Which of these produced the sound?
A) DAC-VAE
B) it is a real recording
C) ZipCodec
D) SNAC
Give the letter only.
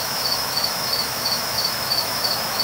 A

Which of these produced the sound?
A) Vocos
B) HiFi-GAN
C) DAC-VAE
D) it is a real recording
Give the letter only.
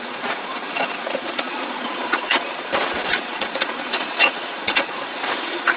A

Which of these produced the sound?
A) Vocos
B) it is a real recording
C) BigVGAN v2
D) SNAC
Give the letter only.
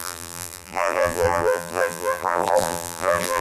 C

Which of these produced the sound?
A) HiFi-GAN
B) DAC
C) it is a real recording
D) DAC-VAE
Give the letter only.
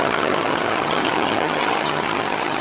A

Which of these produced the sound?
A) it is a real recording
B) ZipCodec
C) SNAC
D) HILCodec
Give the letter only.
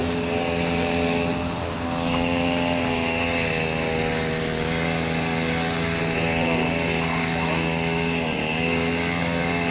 A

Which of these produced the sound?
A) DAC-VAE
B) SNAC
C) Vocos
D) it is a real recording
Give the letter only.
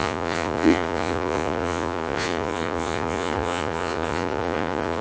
C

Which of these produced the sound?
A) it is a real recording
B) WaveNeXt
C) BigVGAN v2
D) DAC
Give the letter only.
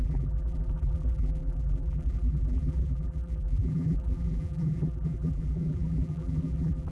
C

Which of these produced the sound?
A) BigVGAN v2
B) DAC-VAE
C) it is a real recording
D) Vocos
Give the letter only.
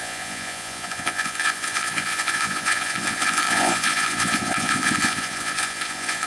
D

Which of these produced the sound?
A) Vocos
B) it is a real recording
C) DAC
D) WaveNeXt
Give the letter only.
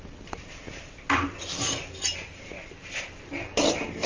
B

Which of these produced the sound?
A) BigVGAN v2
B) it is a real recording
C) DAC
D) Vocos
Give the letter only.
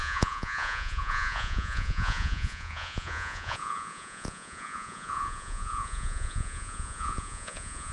D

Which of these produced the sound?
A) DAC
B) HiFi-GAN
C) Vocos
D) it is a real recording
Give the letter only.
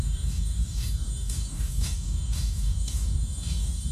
A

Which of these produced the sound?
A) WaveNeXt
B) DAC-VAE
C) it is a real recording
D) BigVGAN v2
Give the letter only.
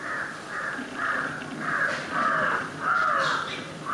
D